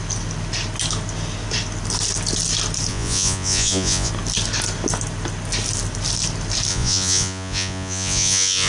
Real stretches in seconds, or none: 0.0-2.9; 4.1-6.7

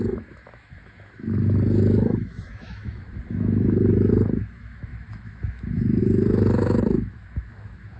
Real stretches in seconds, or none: none

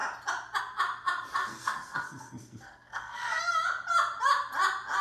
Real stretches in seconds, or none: 0.0-1.4; 3.4-5.0

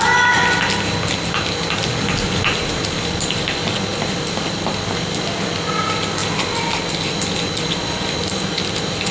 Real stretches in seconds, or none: 0.0-9.1

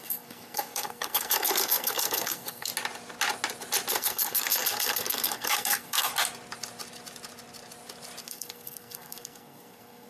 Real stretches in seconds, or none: 2.7-3.9; 6.1-8.2